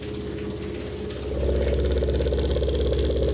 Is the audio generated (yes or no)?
no